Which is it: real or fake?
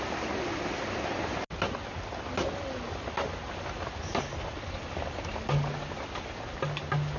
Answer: real